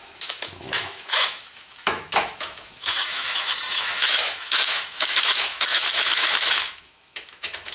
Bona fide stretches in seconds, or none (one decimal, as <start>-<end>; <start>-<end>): none